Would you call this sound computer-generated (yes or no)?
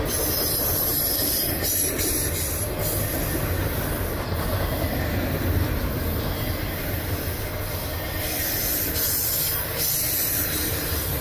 no